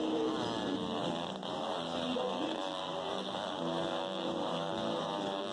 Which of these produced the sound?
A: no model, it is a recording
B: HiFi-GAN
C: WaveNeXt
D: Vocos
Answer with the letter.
A